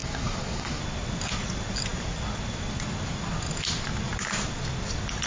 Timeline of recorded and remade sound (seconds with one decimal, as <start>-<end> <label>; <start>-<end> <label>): 0.0-0.8 remade; 0.8-5.3 recorded